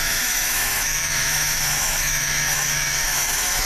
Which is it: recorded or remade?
remade